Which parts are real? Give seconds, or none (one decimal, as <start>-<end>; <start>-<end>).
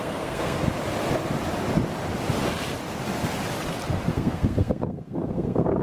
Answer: 0.6-4.1